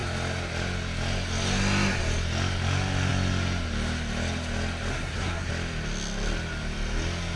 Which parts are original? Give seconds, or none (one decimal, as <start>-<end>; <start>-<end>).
0.0-4.9; 5.5-7.4